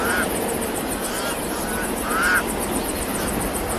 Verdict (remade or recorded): recorded